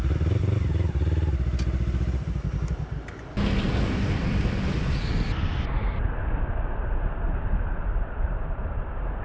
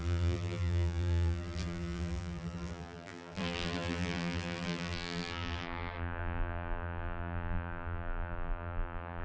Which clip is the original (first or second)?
first